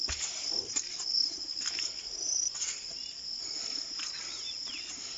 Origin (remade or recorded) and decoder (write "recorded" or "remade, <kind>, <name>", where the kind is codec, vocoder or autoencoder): recorded